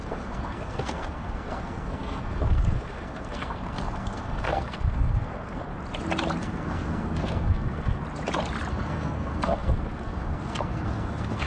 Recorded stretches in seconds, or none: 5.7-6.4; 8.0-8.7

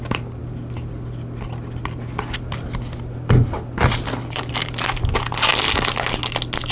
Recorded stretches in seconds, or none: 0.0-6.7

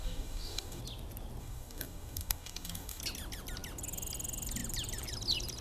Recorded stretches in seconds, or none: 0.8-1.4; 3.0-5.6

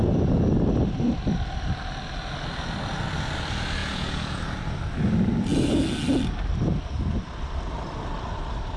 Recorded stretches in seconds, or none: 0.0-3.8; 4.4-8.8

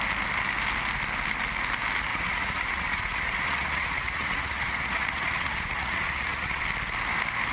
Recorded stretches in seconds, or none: 0.0-2.1; 6.6-7.5